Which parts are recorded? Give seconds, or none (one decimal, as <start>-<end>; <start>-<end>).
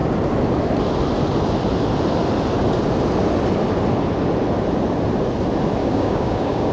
0.0-5.8